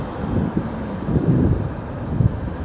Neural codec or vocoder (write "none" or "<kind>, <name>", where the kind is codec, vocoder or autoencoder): vocoder, BigVGAN v2